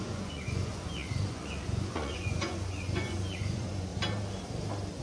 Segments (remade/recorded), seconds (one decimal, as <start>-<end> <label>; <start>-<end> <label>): 0.0-3.9 remade; 3.9-5.0 recorded